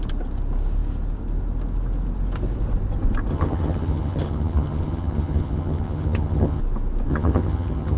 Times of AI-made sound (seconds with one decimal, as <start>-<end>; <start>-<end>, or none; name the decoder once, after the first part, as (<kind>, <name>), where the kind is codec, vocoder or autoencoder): 3.3-6.6 (vocoder, HiFi-GAN); 7.1-8.0